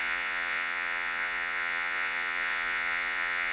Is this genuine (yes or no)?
no